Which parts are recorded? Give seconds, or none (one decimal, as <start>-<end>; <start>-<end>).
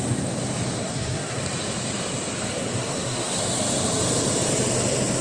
0.0-0.8; 1.4-2.6; 3.4-5.2